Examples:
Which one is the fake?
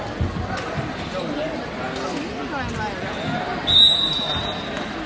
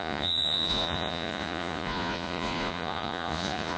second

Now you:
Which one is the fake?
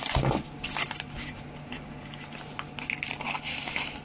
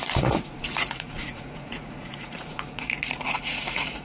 second